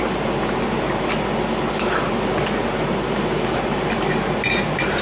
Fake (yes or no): no